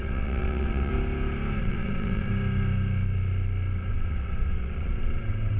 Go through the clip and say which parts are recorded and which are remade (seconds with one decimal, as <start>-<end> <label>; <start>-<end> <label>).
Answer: 0.0-0.9 remade; 0.9-1.6 recorded; 1.6-2.3 remade; 2.3-3.9 recorded; 3.9-5.6 remade